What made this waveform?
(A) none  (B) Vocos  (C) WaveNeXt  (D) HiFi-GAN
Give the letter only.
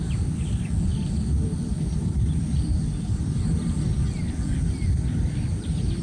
A